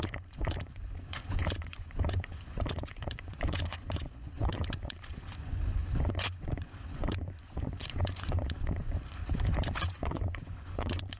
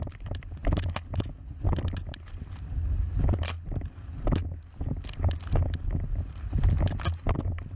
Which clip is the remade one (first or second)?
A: first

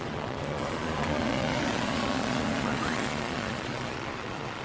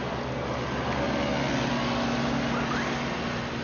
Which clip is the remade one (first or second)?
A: first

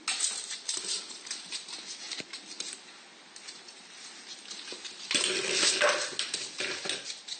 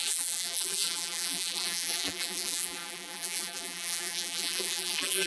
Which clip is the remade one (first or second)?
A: second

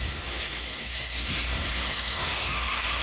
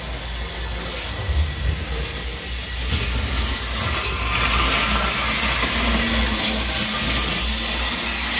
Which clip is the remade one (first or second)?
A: first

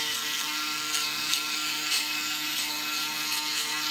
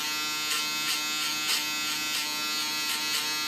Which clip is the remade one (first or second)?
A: first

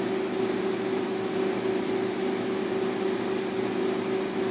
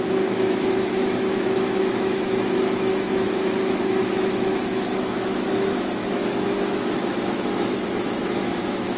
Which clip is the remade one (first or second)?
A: second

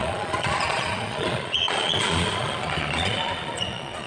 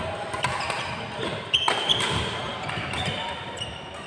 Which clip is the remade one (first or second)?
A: first